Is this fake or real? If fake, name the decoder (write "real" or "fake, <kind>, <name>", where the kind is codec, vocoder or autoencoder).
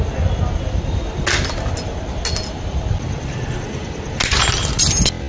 real